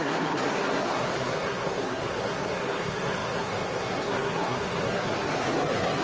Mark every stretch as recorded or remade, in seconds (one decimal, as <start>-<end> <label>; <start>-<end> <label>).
0.0-6.0 remade